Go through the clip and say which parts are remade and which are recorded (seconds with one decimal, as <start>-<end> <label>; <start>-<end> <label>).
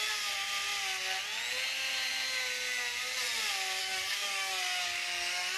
0.0-3.8 recorded; 3.8-5.6 remade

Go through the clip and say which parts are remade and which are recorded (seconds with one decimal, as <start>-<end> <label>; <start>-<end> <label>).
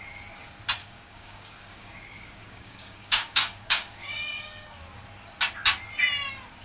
0.0-0.8 recorded; 0.8-4.8 remade; 4.8-6.6 recorded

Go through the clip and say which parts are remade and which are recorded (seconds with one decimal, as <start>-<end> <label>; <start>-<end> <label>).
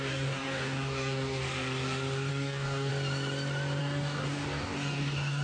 0.0-1.4 remade; 1.4-2.3 recorded; 2.3-2.9 remade; 2.9-3.8 recorded; 3.8-5.4 remade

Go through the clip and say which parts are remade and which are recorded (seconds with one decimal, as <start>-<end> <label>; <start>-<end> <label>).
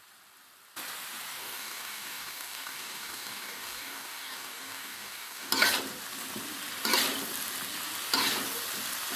0.0-1.4 recorded; 1.4-5.5 remade; 5.5-9.2 recorded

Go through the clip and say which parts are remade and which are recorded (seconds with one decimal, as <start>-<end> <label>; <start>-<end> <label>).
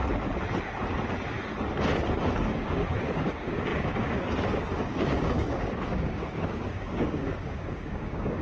0.0-2.3 recorded; 2.3-8.4 remade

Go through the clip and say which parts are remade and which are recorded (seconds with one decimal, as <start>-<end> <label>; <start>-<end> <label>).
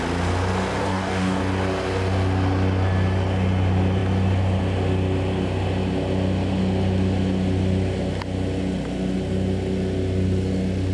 0.0-0.8 recorded; 0.8-1.4 remade; 1.4-10.9 recorded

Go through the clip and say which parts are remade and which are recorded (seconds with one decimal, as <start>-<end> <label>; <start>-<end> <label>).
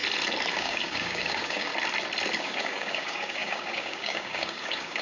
0.0-0.5 recorded; 0.5-1.7 remade; 1.7-2.4 recorded; 2.4-5.0 remade